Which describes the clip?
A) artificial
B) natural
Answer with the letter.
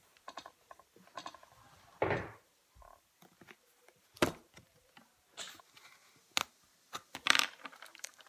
B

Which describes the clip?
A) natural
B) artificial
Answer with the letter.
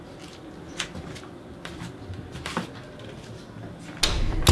A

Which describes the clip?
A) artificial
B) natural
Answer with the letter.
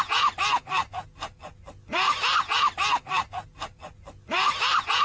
B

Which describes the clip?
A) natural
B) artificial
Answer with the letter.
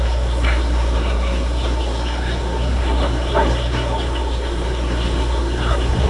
B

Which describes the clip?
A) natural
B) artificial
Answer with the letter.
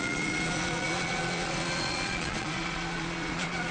B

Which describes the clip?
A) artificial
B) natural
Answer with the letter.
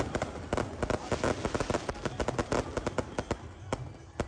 B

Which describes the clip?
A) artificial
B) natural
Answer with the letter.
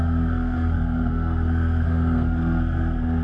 A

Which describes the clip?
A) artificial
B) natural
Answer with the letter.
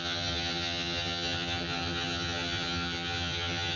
A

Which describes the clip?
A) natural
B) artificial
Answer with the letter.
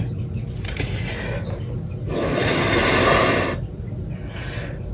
A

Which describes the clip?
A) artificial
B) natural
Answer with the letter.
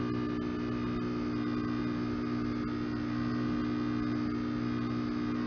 B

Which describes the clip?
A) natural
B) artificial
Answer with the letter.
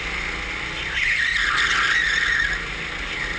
A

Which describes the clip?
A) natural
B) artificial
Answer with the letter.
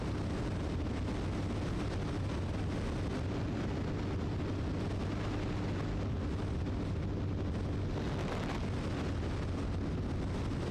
A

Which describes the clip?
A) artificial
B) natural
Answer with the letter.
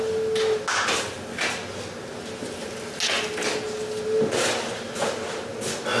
B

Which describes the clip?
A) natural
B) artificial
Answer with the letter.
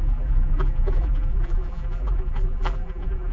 B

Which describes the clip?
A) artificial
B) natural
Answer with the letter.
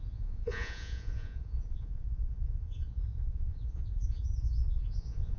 A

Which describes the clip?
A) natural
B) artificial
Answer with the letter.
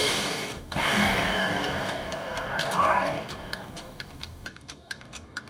B